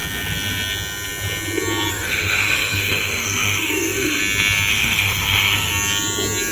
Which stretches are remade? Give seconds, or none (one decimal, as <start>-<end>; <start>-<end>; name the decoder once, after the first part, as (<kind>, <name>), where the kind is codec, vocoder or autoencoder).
1.9-4.2 (codec, SNAC); 4.7-5.7